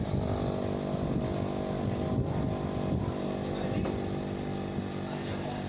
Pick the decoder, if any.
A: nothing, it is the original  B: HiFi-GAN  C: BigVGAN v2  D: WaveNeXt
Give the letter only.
A